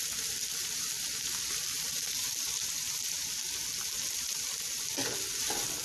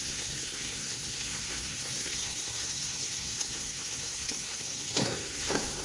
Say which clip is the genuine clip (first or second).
first